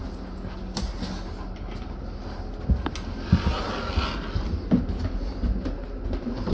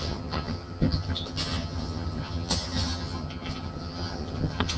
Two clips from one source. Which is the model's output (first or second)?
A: second